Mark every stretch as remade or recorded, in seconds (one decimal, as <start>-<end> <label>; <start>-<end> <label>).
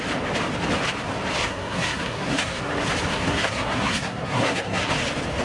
0.0-1.4 recorded; 1.4-2.6 remade; 2.6-3.1 recorded; 3.1-4.9 remade; 4.9-5.4 recorded